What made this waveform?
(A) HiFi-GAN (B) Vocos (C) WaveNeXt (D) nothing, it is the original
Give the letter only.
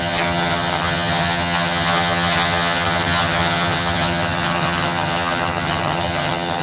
A